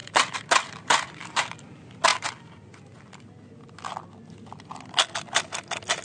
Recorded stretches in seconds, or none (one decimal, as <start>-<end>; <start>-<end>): 1.5-6.0